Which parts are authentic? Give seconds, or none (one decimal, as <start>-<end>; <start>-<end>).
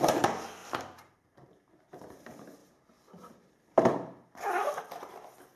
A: 0.0-0.6; 2.0-2.6; 4.8-5.6